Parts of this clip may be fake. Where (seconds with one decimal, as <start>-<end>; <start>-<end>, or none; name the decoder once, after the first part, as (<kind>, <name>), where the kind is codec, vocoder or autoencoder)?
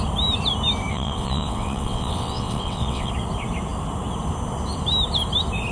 0.9-3.1 (vocoder, WaveNeXt)